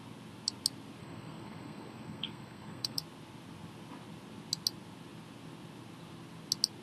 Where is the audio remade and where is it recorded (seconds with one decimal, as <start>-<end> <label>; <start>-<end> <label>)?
0.0-1.0 recorded; 1.0-3.0 remade; 3.0-6.8 recorded

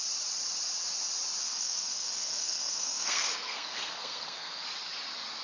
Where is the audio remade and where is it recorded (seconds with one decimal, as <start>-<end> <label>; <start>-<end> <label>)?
0.0-1.4 recorded; 1.4-4.6 remade; 4.6-5.4 recorded

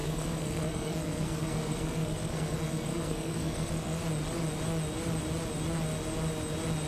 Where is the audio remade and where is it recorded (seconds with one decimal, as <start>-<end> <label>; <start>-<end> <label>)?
0.0-4.0 remade; 4.0-6.9 recorded

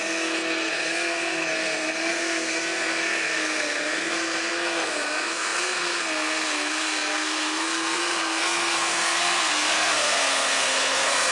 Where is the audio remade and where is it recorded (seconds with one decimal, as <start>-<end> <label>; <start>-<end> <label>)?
0.0-11.3 remade

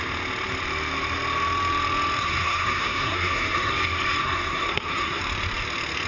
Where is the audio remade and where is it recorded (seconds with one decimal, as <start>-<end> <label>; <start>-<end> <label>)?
0.0-2.2 recorded; 2.2-3.7 remade; 3.7-4.2 recorded; 4.2-5.2 remade; 5.2-6.1 recorded

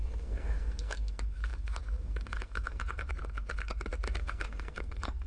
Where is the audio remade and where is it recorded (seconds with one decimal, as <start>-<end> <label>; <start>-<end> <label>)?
0.0-5.3 remade